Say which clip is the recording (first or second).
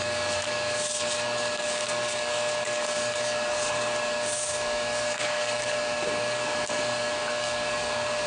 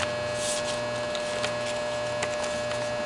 second